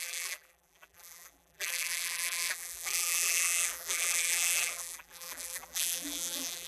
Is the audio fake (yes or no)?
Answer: yes